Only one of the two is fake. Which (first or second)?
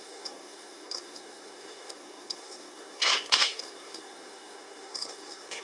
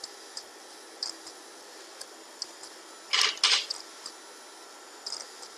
first